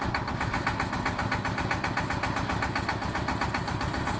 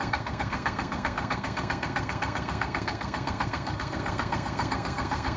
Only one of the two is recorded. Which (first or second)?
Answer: first